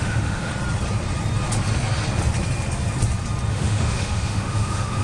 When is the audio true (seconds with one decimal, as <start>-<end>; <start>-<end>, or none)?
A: 0.5-3.5